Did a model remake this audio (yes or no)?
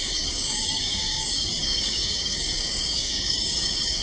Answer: yes